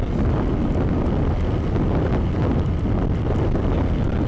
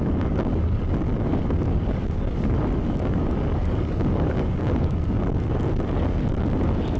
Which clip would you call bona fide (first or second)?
first